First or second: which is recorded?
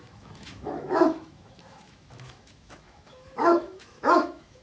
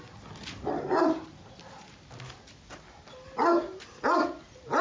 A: second